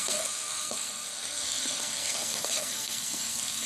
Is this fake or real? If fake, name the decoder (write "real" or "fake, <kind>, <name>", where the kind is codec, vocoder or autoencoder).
fake, codec, SNAC